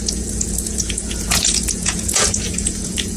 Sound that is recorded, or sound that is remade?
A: remade